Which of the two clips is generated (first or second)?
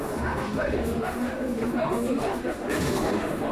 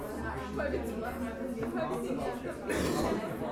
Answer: first